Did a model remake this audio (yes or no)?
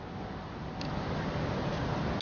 no